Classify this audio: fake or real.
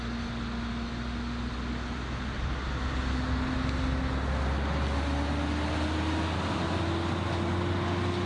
real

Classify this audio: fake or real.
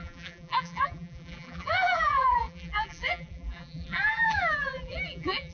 fake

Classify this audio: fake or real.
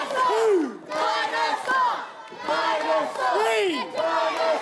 real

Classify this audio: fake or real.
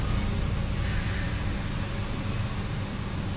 real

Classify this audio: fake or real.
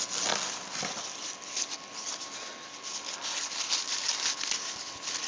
real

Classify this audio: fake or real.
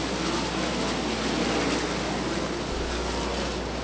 real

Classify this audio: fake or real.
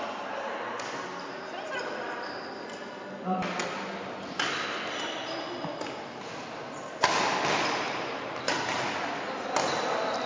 real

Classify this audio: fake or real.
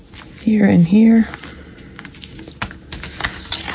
real